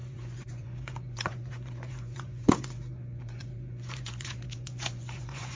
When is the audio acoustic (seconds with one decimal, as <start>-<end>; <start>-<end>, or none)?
none